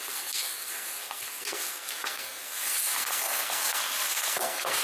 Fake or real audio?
fake